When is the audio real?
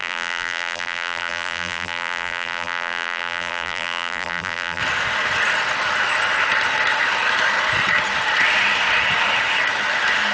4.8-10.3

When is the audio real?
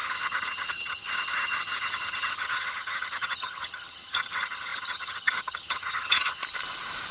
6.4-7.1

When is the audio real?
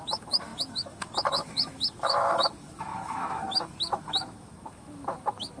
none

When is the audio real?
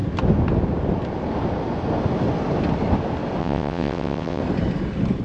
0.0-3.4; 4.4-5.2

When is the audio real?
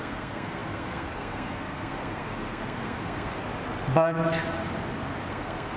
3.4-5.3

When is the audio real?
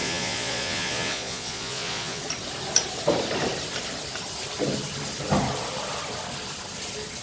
2.2-7.2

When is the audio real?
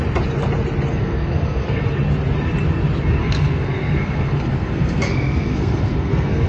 0.0-0.9; 1.8-3.2